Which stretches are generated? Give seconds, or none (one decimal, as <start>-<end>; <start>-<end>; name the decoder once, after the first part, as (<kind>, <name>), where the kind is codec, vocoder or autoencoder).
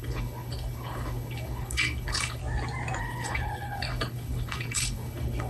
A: 0.0-2.4 (codec, HILCodec); 3.0-5.5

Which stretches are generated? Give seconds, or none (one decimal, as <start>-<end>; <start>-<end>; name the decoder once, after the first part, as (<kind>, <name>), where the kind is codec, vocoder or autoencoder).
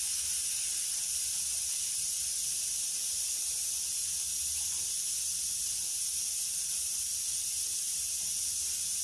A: none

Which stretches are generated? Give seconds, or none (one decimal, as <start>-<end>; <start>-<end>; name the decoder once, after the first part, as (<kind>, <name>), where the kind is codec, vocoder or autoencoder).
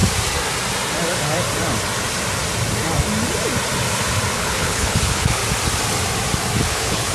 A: 4.3-5.4 (codec, HILCodec); 6.6-7.1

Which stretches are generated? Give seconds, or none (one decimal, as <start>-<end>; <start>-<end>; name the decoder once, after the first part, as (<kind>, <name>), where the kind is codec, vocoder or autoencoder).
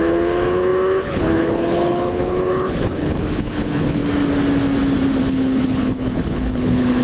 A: 0.0-4.0 (codec, HILCodec); 5.2-7.0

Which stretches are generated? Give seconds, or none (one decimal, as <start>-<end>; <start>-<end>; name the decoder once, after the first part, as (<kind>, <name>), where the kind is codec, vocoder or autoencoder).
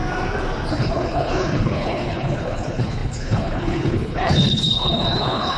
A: 0.7-5.6 (codec, HILCodec)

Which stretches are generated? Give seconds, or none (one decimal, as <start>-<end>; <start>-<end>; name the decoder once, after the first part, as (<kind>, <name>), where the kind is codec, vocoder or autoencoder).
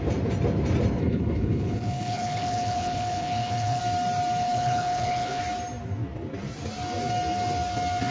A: 1.0-3.8 (codec, HILCodec); 4.4-5.4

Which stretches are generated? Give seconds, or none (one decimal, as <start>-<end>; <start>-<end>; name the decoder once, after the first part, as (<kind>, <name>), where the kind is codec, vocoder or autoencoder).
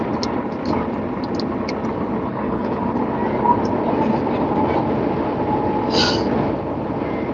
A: 2.3-2.8 (codec, HILCodec)